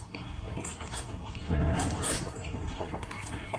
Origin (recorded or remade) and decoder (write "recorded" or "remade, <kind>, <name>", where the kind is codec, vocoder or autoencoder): remade, codec, SNAC